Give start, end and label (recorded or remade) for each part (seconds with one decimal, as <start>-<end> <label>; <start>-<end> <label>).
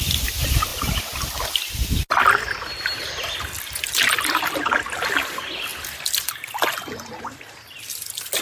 0.0-5.7 recorded; 5.7-6.3 remade; 6.3-8.4 recorded